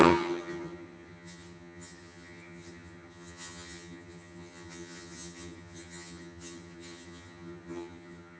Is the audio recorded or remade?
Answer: remade